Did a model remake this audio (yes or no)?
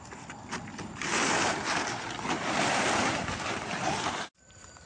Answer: no